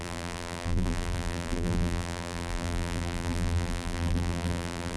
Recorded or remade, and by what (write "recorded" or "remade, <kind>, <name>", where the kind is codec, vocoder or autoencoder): remade, vocoder, BigVGAN v2